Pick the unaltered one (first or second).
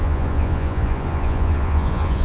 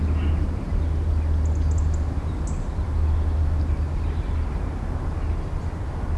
second